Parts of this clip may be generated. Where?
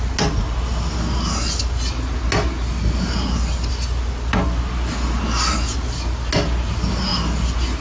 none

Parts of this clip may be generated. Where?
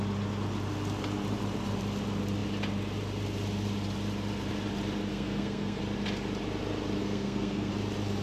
5.1-5.8; 7.0-7.7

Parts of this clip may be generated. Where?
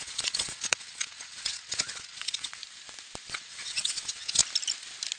0.0-2.6; 3.3-4.4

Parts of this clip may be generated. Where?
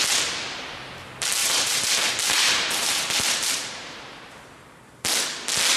1.4-4.4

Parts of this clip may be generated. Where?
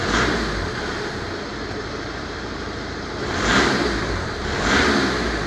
1.5-4.8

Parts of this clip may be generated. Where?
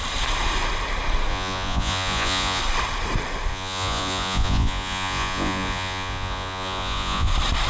1.3-2.6; 3.5-7.3